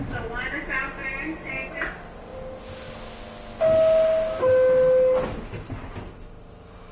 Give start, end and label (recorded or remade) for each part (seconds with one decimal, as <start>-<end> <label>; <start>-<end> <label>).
0.0-6.9 recorded